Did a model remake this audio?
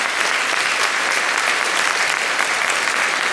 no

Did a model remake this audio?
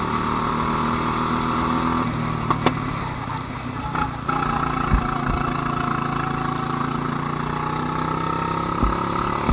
no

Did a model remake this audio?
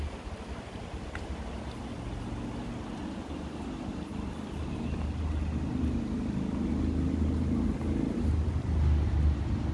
no